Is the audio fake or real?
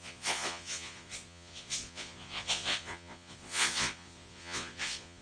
fake